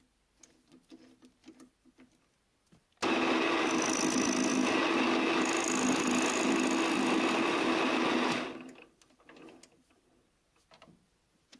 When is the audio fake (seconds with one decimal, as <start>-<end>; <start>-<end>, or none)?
none